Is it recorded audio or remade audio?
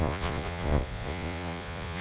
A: remade